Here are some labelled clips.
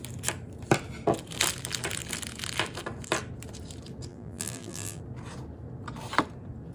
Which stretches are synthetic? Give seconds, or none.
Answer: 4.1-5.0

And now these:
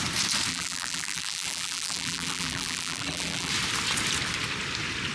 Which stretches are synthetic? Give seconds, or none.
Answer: 0.5-3.5

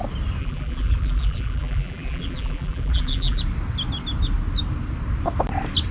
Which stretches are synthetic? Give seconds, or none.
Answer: 0.4-3.4

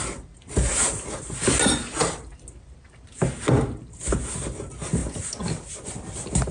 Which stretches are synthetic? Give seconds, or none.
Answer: none

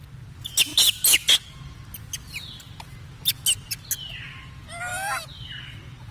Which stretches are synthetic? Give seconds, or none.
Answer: 4.9-5.6